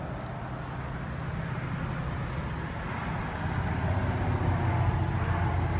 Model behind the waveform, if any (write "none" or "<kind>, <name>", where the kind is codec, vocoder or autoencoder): none